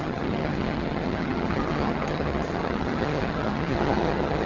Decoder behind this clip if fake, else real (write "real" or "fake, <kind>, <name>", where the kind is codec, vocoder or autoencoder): fake, vocoder, HiFi-GAN